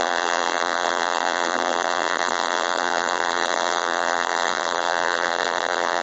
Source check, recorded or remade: remade